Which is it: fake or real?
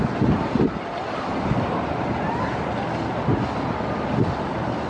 real